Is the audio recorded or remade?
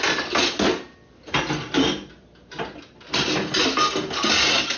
recorded